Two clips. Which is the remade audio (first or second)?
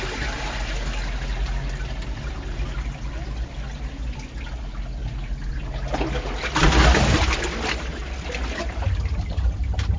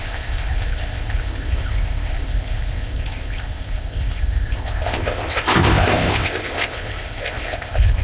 second